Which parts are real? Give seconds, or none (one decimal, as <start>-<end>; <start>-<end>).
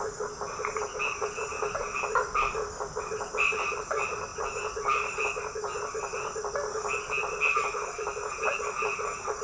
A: 0.0-9.4